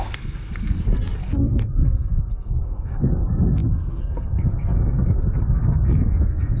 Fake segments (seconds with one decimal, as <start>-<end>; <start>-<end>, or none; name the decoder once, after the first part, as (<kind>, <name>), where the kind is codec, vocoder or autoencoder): 0.0-6.6 (codec, SNAC)